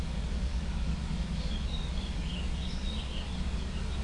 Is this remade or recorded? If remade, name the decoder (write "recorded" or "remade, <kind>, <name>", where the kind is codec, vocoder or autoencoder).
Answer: remade, codec, DAC